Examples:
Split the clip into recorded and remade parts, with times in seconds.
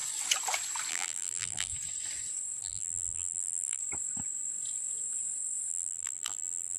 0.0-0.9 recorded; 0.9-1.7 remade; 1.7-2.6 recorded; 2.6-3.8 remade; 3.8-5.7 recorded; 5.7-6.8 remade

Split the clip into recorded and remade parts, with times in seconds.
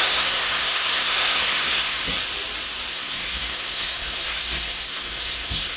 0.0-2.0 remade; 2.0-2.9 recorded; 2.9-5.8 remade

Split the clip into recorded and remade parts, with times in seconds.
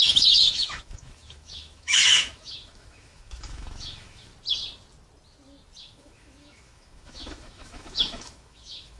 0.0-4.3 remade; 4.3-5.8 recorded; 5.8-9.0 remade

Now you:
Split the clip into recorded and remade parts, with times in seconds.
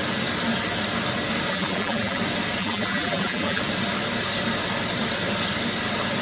0.0-1.5 recorded; 1.5-2.2 remade; 2.2-2.6 recorded; 2.6-3.6 remade; 3.6-6.2 recorded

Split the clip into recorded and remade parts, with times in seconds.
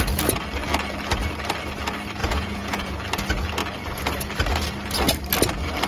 0.0-2.2 recorded; 2.2-2.9 remade; 2.9-5.9 recorded